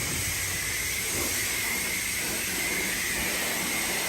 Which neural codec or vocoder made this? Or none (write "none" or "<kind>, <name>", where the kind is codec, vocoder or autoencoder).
none